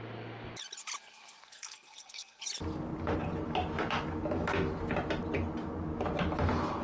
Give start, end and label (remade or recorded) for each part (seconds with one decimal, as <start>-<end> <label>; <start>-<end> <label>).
0.0-1.4 recorded; 1.4-2.4 remade; 2.4-6.8 recorded